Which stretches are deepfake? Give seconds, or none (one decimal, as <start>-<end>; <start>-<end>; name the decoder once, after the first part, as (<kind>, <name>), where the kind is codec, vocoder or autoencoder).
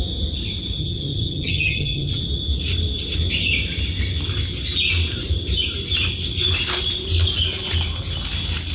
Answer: 0.8-2.2 (vocoder, HiFi-GAN)